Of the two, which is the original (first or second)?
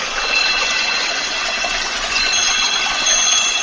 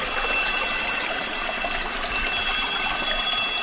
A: second